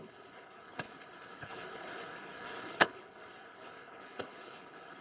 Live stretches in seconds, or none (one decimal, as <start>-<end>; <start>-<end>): none